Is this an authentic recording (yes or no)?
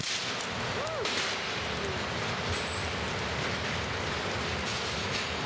yes